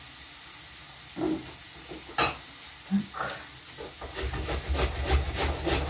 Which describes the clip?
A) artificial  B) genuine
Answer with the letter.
B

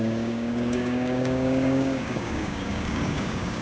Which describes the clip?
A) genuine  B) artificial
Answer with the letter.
B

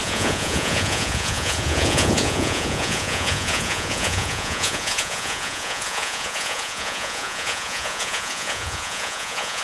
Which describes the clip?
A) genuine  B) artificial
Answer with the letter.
B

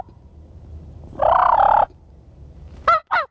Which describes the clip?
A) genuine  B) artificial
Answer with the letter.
B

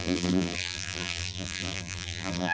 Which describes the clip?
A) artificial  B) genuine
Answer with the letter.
A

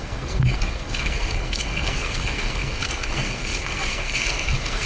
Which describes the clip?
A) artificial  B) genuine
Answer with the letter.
A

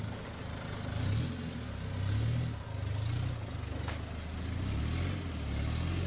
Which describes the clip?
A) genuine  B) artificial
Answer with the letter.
A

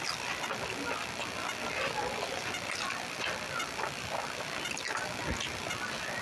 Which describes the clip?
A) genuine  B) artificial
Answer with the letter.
A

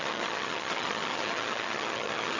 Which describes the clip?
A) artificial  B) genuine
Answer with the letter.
A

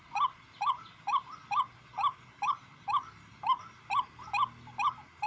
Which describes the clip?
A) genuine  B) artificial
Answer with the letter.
A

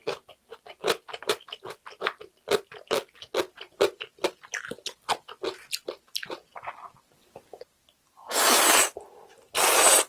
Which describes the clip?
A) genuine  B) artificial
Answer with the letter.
A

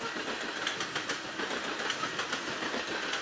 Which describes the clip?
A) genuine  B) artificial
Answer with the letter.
A